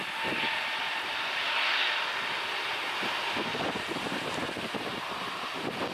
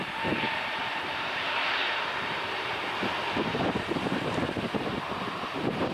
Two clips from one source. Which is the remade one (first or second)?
second